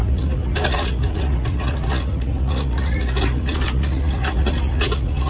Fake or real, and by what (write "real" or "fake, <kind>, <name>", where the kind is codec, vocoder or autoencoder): fake, vocoder, Vocos